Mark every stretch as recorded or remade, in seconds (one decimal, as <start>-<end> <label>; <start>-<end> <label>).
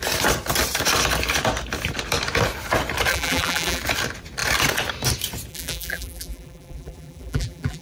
0.0-3.1 recorded; 3.1-3.8 remade; 3.8-5.5 recorded; 5.5-7.8 remade